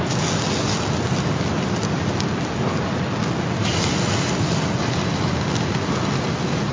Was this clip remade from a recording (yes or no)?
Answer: no